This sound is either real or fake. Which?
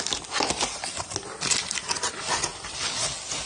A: real